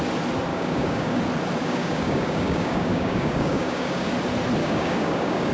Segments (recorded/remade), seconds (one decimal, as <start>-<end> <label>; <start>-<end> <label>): 0.0-0.5 recorded; 0.5-1.2 remade; 1.2-1.6 recorded; 1.6-4.1 remade; 4.1-4.6 recorded; 4.6-5.5 remade